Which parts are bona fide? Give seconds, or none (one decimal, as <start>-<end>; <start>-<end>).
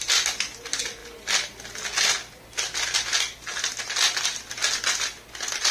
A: 0.0-5.7